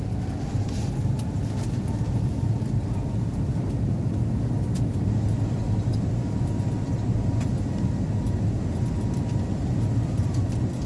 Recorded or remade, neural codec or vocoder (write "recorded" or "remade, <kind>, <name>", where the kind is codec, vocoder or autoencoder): recorded